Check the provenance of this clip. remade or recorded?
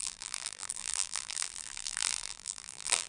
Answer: remade